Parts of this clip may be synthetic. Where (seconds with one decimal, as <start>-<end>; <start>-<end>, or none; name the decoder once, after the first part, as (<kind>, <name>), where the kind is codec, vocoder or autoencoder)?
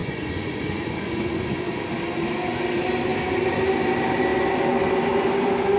0.0-1.8 (vocoder, Vocos)